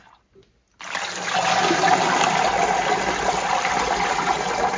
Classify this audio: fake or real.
real